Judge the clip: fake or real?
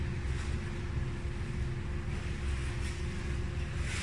real